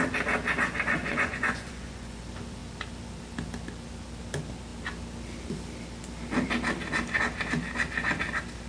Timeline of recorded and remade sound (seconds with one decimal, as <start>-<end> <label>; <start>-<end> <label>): 0.0-1.0 recorded; 1.0-2.2 remade; 2.2-8.7 recorded